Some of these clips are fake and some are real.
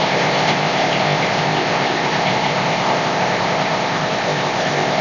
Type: fake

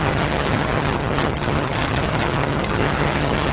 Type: fake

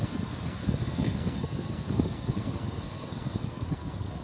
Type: fake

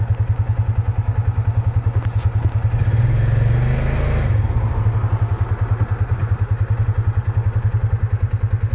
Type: real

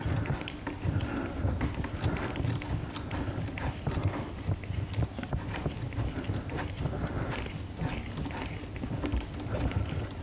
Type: real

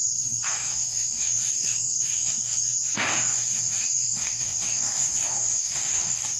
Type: fake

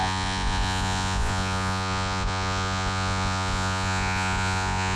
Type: fake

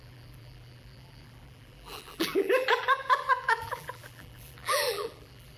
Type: fake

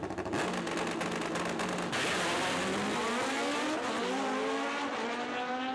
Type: real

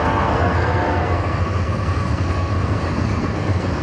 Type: fake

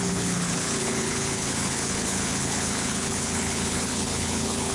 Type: fake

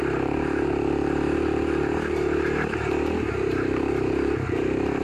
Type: fake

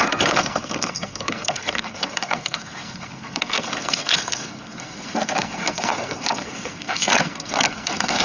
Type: fake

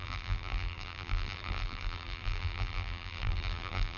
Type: fake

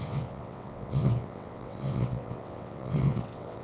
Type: fake